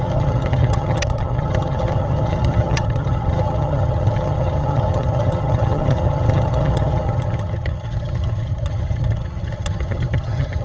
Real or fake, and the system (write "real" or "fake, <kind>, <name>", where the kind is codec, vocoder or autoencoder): fake, vocoder, HiFi-GAN